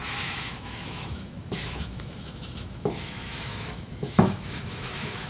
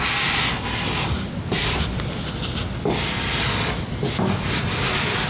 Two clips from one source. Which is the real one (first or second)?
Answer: second